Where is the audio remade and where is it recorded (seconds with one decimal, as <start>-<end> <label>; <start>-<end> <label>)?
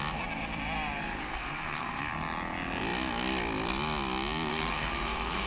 0.0-1.3 recorded; 1.3-2.0 remade; 2.0-4.5 recorded; 4.5-5.5 remade